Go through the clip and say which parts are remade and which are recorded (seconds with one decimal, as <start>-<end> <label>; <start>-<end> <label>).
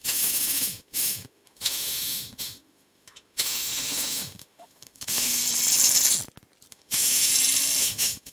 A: 0.0-5.4 remade; 5.4-6.7 recorded; 6.7-7.3 remade; 7.3-7.8 recorded; 7.8-8.3 remade